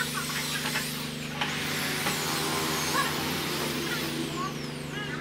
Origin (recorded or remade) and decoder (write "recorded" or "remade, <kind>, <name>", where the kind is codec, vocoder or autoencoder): recorded